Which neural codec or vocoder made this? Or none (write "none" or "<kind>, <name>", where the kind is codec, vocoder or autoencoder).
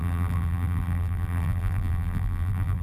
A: vocoder, BigVGAN v2